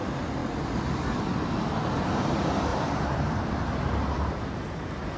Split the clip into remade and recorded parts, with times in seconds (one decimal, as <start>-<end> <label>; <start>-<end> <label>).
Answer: 0.0-2.7 recorded; 2.7-5.2 remade